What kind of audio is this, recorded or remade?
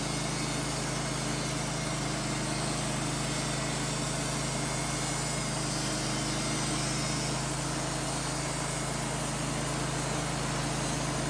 recorded